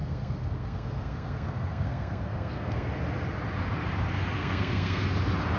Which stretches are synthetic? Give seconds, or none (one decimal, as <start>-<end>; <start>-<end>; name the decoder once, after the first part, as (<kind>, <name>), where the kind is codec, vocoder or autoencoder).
0.0-2.9 (codec, SNAC); 4.4-5.0